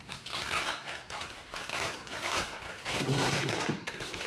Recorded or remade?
remade